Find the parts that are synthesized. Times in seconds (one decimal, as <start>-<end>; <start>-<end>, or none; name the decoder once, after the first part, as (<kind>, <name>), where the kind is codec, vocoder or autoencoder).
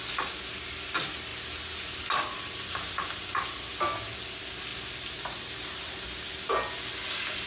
none